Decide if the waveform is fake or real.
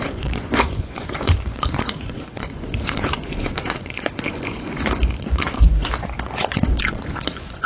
fake